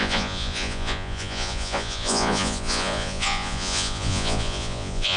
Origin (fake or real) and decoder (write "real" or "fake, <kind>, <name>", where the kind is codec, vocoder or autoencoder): fake, vocoder, Vocos